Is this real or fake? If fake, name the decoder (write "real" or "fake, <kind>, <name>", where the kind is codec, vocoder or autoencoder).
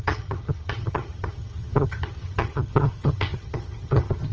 fake, vocoder, HiFi-GAN